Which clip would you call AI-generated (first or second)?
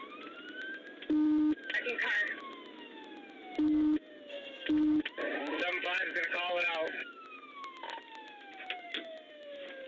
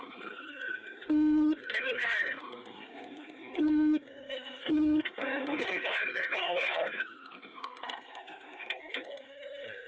second